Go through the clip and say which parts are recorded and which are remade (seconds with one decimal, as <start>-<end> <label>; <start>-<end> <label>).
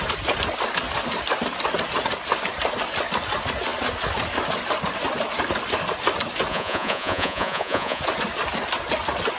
0.0-6.5 recorded; 6.5-8.0 remade; 8.0-9.4 recorded